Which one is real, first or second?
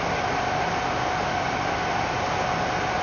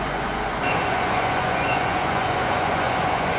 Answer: first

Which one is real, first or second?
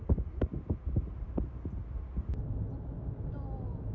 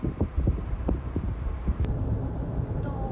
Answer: first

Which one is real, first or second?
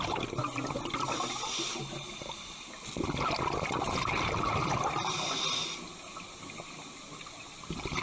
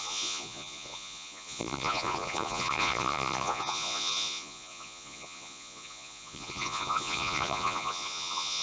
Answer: first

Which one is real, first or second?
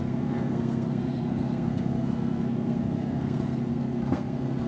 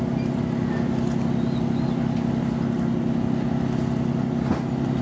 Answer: second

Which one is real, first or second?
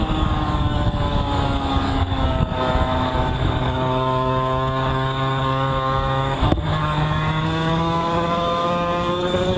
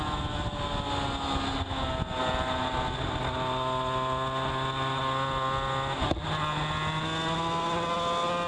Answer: second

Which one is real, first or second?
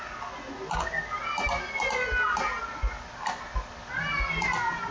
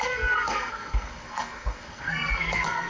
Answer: first